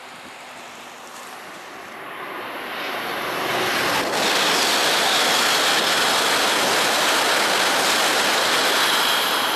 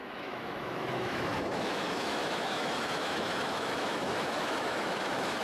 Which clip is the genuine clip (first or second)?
first